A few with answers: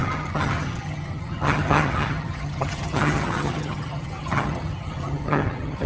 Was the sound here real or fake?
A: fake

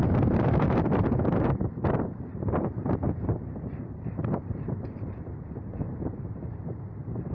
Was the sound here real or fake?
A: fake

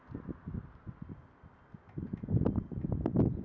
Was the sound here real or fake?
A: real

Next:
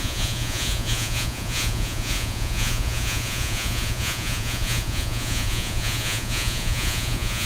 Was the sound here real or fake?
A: fake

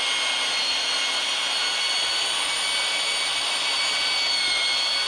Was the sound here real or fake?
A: real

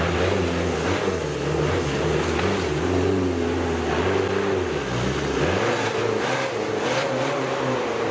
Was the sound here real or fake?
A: real